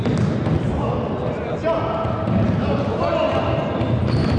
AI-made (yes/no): no